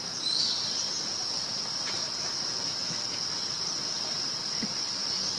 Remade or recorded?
recorded